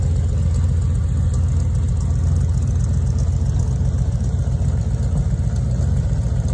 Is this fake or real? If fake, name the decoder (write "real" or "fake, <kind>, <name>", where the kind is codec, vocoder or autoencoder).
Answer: real